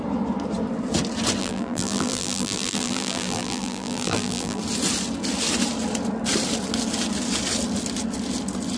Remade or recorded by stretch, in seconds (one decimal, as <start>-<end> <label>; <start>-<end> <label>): 0.0-1.4 recorded; 1.4-4.6 remade; 4.6-8.8 recorded